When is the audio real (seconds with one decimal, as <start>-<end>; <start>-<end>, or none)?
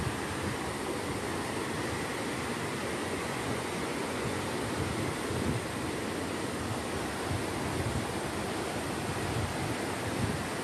0.0-3.0; 4.4-10.6